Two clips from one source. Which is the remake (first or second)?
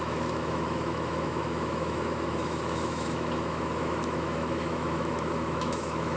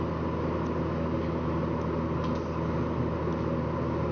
first